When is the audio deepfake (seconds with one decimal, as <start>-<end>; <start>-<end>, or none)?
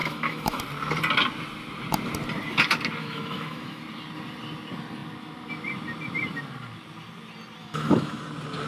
0.0-0.6; 3.0-3.8; 7.6-8.2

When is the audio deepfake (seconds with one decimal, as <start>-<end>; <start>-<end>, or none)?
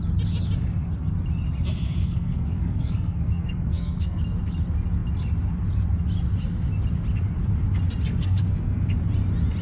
2.0-4.2; 8.1-8.8